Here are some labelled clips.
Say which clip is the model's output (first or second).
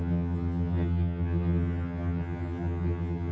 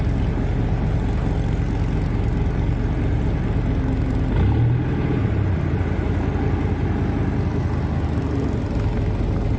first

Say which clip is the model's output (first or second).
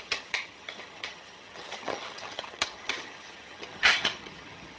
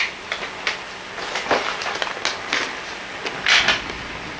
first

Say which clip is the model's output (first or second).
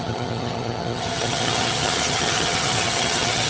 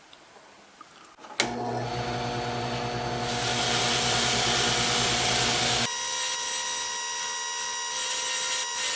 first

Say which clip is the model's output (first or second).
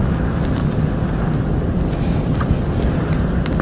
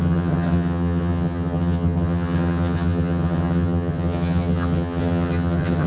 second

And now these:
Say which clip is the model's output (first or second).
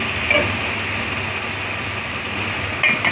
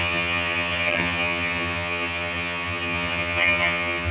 second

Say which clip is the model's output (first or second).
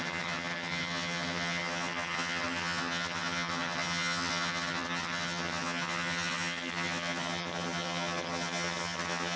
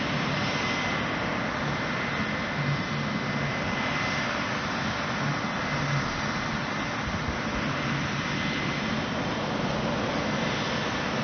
first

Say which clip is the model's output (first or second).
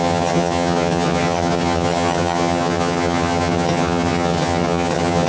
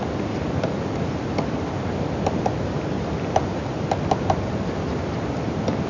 first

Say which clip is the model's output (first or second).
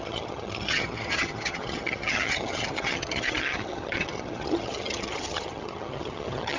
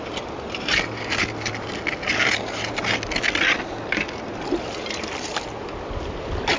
first